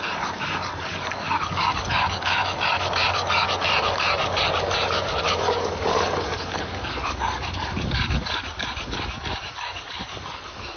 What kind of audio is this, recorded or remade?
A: remade